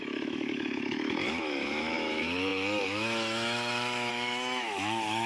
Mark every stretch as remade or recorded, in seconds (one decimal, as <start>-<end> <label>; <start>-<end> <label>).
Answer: 0.0-5.3 remade